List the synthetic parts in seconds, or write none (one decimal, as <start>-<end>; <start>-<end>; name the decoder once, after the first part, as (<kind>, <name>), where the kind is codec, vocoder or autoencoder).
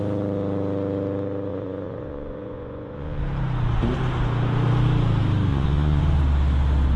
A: 1.5-3.2 (vocoder, Vocos); 5.5-6.0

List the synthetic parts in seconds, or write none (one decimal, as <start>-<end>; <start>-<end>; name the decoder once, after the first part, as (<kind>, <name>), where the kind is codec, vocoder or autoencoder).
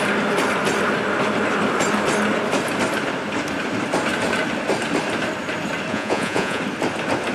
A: 5.9-6.6 (vocoder, Vocos)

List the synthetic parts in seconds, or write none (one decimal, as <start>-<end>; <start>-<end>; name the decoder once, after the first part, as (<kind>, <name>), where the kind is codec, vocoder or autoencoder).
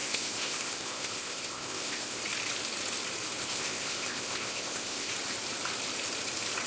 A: 0.0-2.2 (codec, ZipCodec); 3.4-5.1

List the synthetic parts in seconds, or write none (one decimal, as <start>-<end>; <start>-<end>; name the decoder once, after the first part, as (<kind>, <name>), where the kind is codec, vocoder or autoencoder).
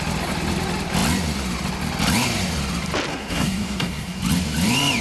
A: 3.1-4.2 (codec, SNAC)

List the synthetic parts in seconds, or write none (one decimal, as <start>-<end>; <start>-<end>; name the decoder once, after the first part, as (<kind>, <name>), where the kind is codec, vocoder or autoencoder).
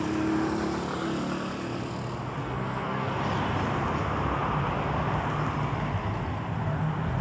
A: 2.4-3.2 (codec, SNAC)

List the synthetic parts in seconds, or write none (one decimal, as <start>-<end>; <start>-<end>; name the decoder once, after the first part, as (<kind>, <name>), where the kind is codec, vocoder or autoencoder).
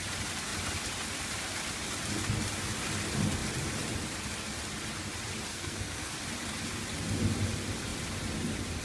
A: 5.5-6.1 (codec, SNAC)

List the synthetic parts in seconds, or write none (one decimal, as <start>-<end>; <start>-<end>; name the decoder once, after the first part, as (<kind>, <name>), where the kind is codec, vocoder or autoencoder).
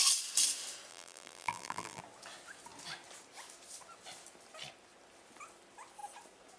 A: 0.9-2.0 (vocoder, BigVGAN v2)